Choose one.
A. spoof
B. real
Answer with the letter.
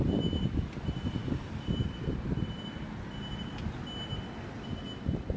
B